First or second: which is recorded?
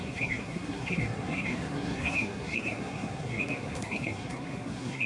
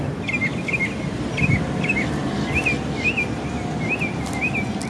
second